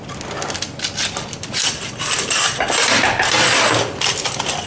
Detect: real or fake real